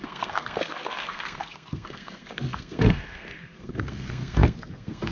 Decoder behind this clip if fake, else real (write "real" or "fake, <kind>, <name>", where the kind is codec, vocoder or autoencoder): fake, codec, SNAC